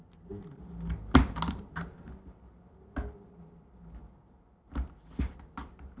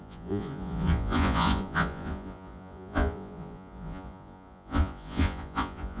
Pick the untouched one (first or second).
first